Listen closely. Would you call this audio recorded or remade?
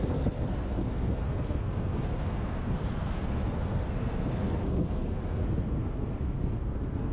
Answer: remade